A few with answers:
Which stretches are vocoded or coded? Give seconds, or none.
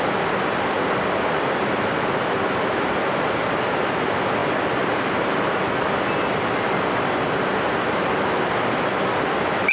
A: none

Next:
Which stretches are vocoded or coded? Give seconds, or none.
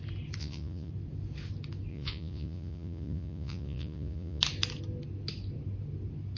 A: 0.4-0.9 (vocoder, Vocos); 1.9-4.4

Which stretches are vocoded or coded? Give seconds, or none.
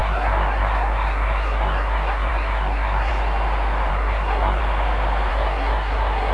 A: 0.0-3.1 (codec, SNAC); 3.9-4.6; 5.3-6.3